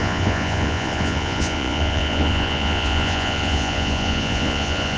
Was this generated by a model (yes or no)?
yes